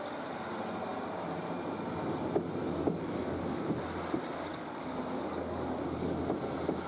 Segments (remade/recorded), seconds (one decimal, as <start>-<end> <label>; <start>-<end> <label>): 0.0-2.8 recorded; 2.8-3.7 remade; 3.7-4.5 recorded; 4.5-6.2 remade; 6.2-6.9 recorded